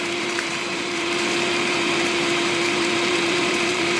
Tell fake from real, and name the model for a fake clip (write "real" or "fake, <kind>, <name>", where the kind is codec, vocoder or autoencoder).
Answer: fake, vocoder, BigVGAN v2